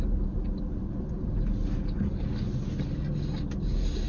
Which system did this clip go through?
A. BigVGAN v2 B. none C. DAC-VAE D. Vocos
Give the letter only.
B